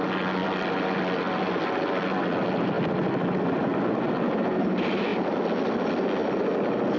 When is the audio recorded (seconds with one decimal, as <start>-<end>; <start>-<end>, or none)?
0.0-0.4; 4.6-5.1; 5.9-7.0